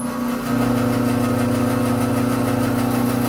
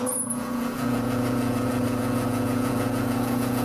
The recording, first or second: first